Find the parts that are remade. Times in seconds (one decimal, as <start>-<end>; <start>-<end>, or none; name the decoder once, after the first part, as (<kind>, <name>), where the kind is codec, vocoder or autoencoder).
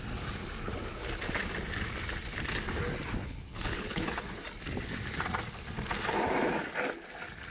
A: 3.2-4.4 (codec, HILCodec)